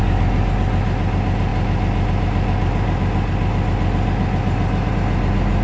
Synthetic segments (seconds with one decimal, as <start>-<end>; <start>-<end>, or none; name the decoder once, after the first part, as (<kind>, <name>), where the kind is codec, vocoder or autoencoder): none